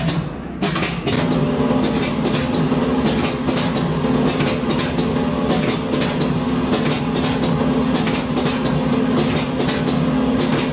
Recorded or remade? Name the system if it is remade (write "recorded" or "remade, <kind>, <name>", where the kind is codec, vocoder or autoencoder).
recorded